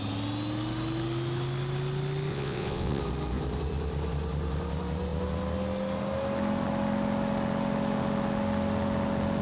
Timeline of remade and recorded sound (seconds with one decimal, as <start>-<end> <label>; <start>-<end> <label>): 0.0-2.3 recorded; 2.3-3.0 remade; 3.0-9.4 recorded